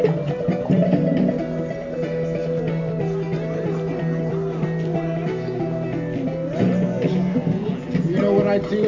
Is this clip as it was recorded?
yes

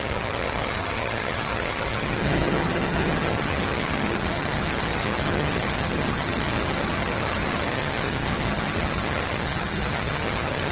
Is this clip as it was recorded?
no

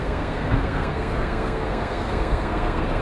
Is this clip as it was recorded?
no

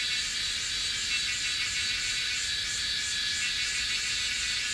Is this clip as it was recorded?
yes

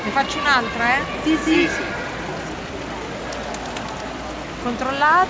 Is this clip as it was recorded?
yes